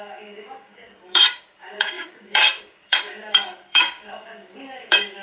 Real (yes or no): no